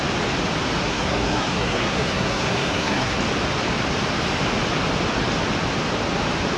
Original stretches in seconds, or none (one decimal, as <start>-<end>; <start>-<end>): 0.0-0.8; 3.2-6.6